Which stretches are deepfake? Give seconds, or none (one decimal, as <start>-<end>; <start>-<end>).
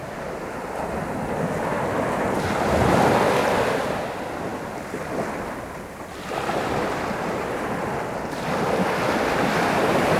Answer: none